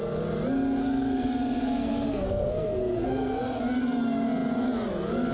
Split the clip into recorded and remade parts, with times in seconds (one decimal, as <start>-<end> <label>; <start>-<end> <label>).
0.0-0.8 recorded; 0.8-3.6 remade; 3.6-5.3 recorded